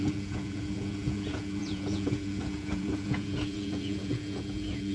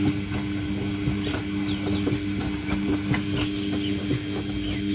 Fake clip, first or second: first